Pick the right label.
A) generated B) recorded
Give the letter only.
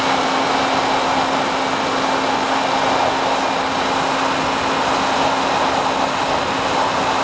B